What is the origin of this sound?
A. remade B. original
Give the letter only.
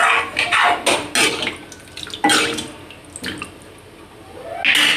B